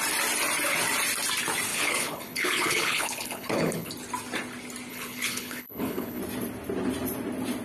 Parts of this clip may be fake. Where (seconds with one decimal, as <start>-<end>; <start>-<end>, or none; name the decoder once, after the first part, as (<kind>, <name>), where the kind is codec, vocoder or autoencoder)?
1.7-3.9 (codec, HILCodec); 4.9-6.2